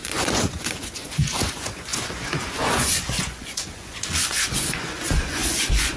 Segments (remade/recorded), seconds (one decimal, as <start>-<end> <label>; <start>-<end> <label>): 0.0-6.0 remade